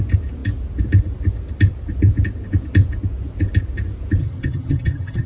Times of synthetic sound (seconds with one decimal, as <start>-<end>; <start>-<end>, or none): 4.2-5.3